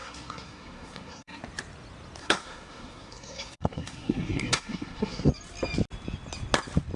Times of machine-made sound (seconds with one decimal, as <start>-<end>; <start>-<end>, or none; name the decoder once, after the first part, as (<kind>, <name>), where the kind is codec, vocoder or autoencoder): 0.0-1.4 (codec, SNAC); 2.2-5.3

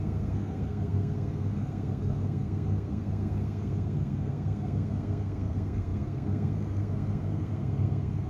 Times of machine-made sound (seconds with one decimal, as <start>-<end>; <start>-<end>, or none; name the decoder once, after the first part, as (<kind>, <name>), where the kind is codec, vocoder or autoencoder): 0.0-8.3 (codec, SNAC)

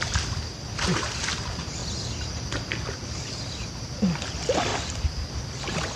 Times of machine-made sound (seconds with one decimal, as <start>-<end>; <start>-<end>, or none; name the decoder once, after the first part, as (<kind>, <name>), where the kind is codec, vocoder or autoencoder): none

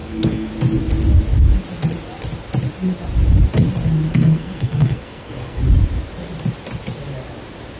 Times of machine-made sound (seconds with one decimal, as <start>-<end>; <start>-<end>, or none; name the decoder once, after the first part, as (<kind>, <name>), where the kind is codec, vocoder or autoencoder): 0.0-0.5 (codec, SNAC); 4.1-5.6

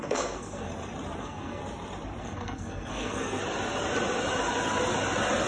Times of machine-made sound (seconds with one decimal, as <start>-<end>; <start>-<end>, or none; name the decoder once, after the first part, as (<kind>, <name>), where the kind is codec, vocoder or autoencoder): 0.0-0.7 (codec, SNAC); 1.2-1.6; 2.2-3.4